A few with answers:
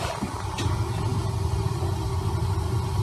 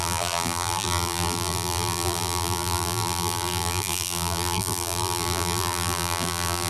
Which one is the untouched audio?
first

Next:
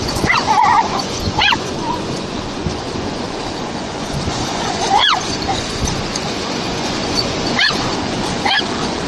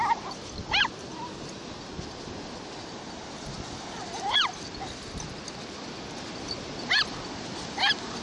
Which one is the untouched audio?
second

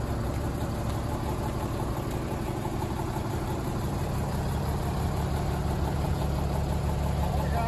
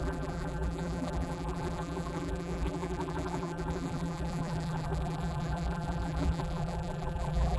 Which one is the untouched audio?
first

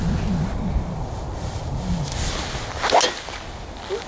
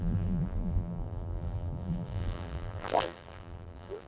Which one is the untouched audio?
first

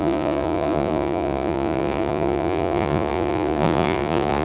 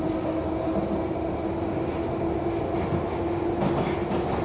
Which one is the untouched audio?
second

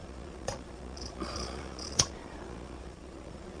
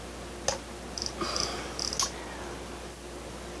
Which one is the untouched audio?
second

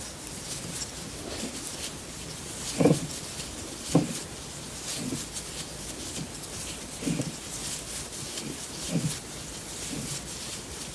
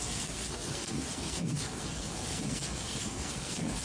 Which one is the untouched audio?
first